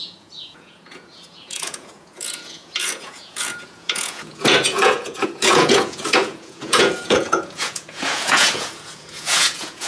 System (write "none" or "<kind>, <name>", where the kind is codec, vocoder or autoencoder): vocoder, Vocos